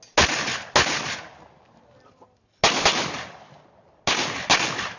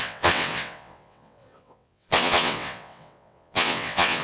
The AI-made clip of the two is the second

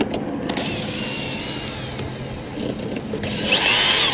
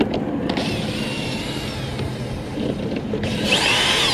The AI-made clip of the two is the second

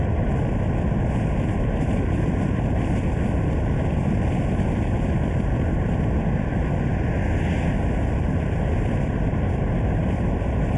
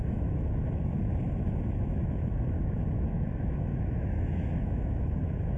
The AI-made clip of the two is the second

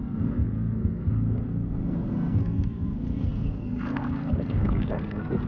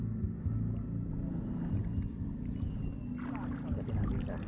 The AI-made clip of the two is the first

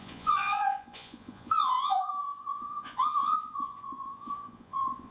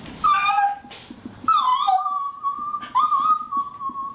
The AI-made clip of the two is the first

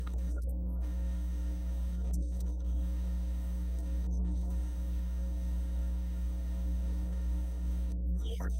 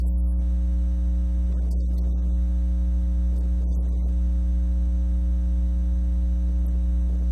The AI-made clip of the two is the first